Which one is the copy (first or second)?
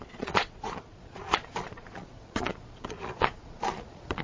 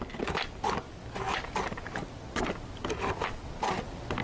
first